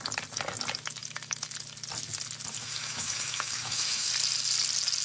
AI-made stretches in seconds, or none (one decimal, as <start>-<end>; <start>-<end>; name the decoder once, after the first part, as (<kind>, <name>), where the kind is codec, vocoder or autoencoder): 2.6-4.1 (autoencoder, DAC-VAE)